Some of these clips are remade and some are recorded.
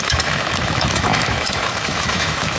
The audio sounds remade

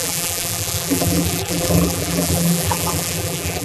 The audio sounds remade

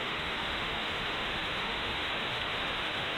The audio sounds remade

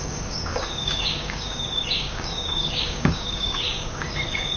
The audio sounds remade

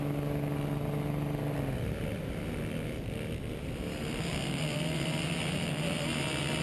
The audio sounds recorded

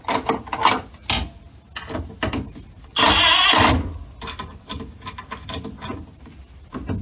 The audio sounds recorded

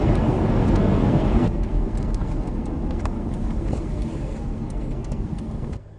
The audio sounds remade